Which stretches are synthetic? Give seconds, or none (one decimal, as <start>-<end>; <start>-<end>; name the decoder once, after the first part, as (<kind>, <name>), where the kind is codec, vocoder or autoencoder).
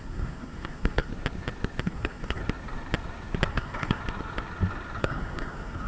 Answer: 0.0-1.1 (codec, SNAC); 1.8-2.4; 3.5-4.0; 5.0-5.9